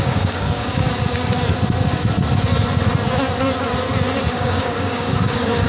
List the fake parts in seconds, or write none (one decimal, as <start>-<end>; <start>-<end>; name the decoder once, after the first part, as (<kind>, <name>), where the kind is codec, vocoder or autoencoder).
0.0-0.9 (codec, DAC); 4.3-5.7